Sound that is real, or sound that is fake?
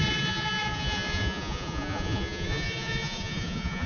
fake